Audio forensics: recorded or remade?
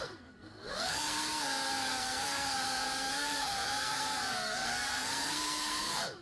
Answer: remade